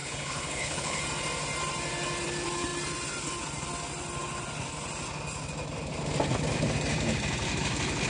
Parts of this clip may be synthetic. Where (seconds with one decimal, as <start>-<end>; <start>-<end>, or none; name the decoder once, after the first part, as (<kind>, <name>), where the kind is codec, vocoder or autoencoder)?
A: 0.0-1.0 (codec, HILCodec)